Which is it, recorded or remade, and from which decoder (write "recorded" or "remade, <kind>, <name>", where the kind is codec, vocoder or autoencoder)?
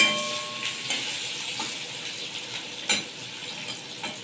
recorded